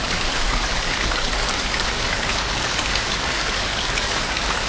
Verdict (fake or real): fake